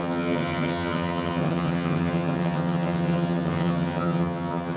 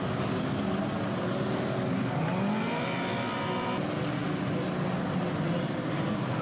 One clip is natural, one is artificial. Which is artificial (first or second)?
first